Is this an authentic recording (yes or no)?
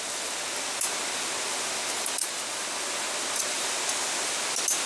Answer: yes